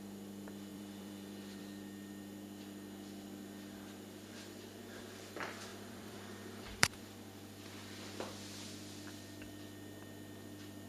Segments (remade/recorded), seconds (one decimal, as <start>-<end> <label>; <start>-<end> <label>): 0.0-0.7 recorded; 0.7-1.6 remade; 1.6-5.7 recorded; 5.7-7.0 remade; 7.0-10.9 recorded